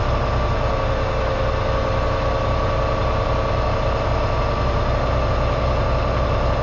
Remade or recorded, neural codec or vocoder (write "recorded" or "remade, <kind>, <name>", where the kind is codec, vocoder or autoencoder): recorded